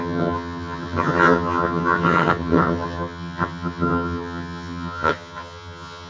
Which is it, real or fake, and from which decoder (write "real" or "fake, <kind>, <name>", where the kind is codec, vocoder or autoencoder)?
fake, vocoder, HiFi-GAN